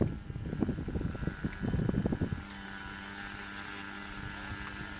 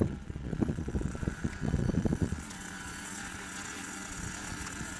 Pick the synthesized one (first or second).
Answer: second